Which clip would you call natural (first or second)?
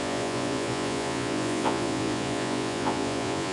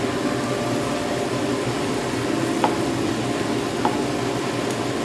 second